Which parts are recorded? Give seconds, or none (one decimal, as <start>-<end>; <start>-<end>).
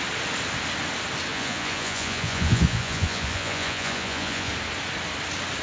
0.0-1.3; 4.5-5.6